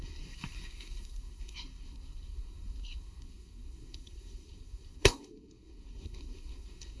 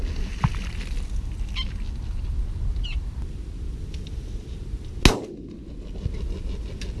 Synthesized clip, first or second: first